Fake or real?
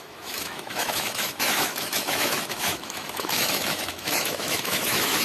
fake